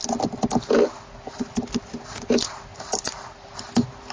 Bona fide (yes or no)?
yes